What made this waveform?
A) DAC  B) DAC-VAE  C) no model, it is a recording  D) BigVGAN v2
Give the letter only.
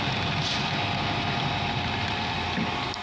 C